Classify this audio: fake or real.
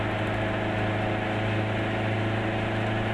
real